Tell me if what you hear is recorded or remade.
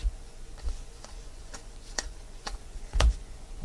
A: remade